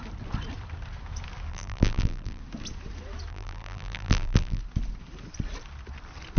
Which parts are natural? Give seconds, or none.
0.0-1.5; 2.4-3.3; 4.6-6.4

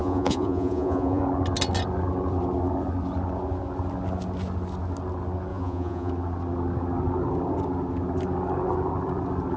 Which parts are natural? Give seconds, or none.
1.2-5.5; 6.1-9.6

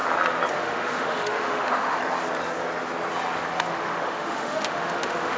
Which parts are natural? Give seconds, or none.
0.0-0.5; 2.0-3.7

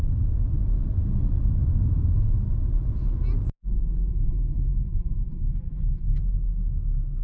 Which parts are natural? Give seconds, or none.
0.0-4.1; 6.2-7.2

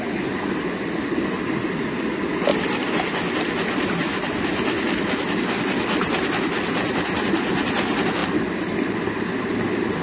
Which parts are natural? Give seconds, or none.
0.0-10.0

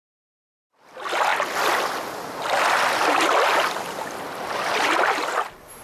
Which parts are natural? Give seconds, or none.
0.0-5.8

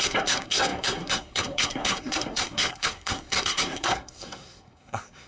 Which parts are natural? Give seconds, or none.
none

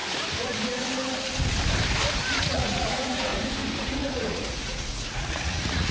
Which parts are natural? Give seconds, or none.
0.0-2.4; 3.3-3.8